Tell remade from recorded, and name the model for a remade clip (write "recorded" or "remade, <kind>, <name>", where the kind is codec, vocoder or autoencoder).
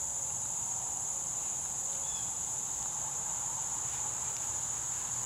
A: remade, vocoder, BigVGAN v2